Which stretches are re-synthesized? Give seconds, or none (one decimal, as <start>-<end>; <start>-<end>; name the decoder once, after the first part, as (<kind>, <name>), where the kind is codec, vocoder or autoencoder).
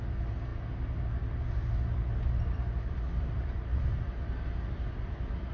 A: none